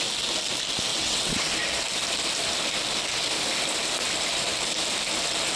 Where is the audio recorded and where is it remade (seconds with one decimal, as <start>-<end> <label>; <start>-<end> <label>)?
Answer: 0.0-0.9 recorded; 0.9-1.5 remade; 1.5-5.6 recorded